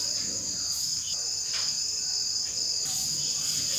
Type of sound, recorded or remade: recorded